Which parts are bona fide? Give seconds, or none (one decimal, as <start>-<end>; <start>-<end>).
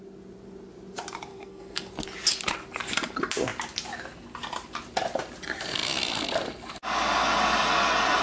0.0-1.3; 1.9-8.2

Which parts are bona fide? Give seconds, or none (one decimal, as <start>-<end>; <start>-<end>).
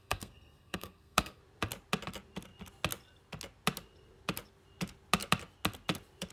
1.4-6.3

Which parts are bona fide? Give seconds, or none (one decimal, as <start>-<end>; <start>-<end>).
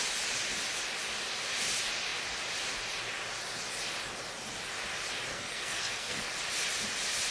0.0-5.3; 6.3-7.3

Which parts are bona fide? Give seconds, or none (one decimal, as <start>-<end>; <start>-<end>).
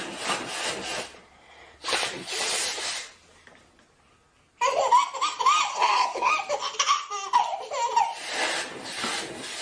0.0-5.7; 6.3-9.6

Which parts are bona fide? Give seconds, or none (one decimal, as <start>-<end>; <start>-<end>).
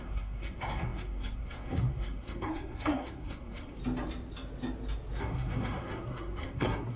3.8-5.2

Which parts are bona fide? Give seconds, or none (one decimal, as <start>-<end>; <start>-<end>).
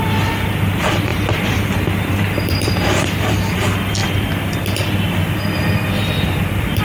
0.0-6.8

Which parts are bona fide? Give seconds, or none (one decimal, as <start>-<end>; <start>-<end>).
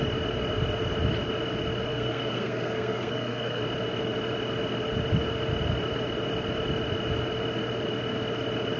0.0-1.9; 3.6-8.8